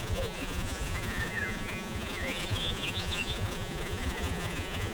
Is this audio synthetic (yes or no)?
yes